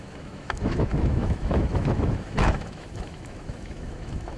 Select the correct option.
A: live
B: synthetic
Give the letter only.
B